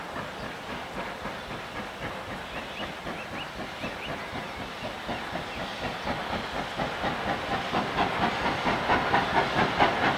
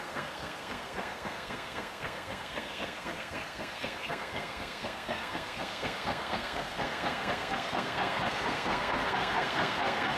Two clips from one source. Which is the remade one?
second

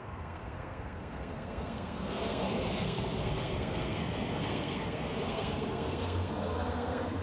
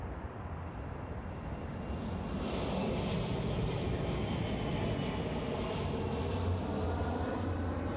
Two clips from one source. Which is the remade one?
first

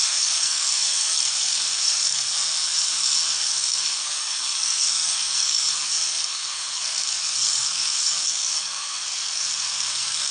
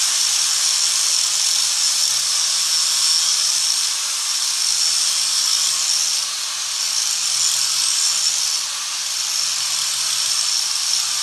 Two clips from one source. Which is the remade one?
first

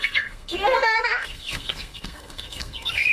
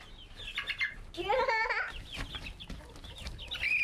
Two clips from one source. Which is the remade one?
first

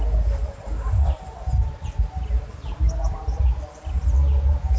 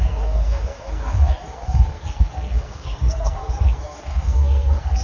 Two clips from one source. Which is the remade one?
second